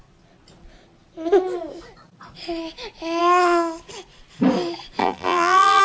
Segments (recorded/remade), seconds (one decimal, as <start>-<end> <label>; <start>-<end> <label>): 0.0-5.0 recorded; 5.0-5.8 remade